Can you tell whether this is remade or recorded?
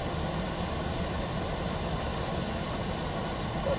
recorded